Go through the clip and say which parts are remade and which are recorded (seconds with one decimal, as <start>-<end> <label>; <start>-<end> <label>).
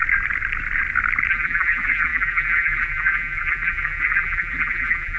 0.0-1.3 recorded; 1.3-5.2 remade